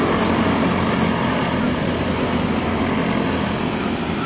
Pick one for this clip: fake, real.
real